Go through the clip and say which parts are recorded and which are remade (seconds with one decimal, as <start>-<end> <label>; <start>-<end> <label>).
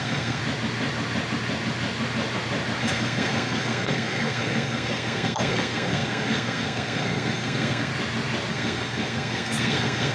0.0-0.4 remade; 0.4-2.8 recorded; 2.8-7.9 remade; 7.9-8.5 recorded; 8.5-10.1 remade